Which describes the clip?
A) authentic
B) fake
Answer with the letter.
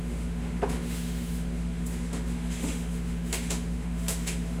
B